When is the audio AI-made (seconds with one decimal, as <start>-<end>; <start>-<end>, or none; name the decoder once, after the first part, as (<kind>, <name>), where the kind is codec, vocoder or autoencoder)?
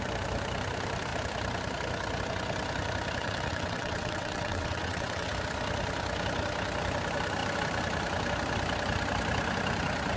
3.2-5.3 (vocoder, WaveNeXt)